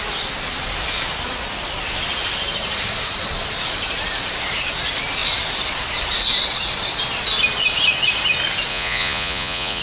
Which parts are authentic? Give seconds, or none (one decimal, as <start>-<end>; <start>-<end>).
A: 0.0-8.7